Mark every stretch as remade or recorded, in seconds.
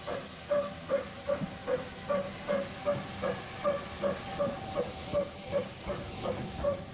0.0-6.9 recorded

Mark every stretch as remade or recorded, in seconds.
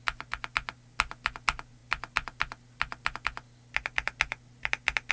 0.0-5.1 recorded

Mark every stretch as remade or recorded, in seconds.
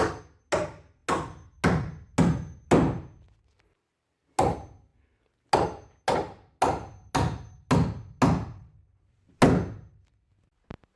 0.0-11.0 recorded